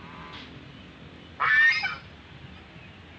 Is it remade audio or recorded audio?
recorded